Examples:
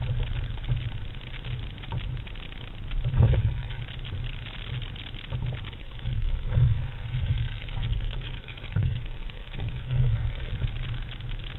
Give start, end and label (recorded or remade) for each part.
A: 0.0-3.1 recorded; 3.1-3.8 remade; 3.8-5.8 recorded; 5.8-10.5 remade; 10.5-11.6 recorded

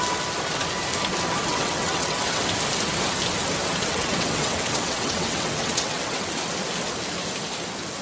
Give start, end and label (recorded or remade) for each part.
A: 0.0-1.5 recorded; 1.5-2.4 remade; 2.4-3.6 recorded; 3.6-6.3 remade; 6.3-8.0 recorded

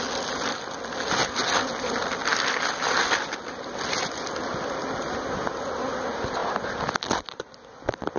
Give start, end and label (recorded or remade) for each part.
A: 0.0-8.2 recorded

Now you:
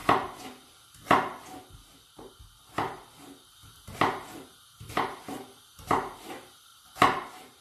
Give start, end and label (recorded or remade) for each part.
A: 0.0-6.7 recorded; 6.7-7.6 remade

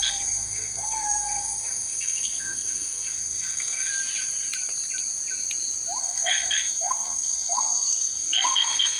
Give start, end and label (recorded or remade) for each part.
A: 0.0-3.9 remade; 3.9-6.0 recorded; 6.0-9.0 remade

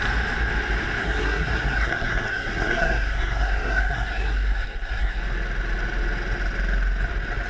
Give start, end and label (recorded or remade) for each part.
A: 0.0-1.0 recorded; 1.0-5.2 remade; 5.2-7.5 recorded